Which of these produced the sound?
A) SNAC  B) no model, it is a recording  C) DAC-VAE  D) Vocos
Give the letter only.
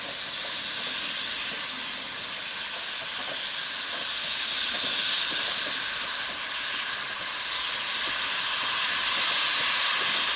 B